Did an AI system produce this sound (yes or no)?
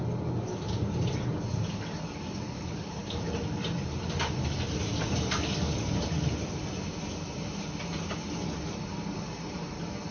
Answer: no